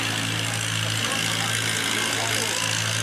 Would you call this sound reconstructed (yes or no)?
no